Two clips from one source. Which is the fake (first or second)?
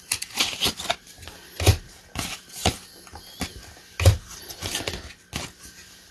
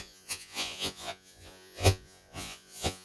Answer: second